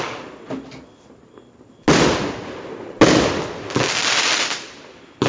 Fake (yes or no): no